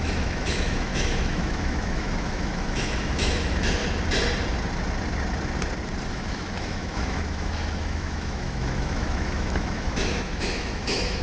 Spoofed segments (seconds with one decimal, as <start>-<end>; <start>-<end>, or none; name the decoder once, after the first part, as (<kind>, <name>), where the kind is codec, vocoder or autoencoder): 0.0-3.8 (autoencoder, DAC-VAE); 6.1-11.2